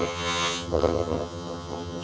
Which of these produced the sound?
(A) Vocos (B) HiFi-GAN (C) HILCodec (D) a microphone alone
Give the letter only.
B